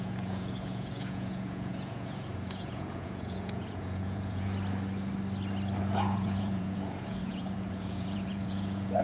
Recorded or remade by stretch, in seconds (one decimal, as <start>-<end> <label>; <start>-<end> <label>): 0.0-4.5 remade; 4.5-5.8 recorded; 5.8-9.0 remade